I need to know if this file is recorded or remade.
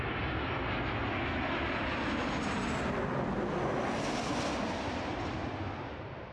recorded